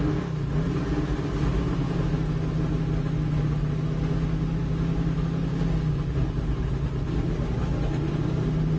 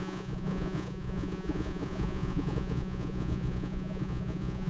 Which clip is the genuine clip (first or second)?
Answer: first